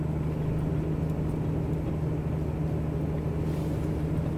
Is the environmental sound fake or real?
real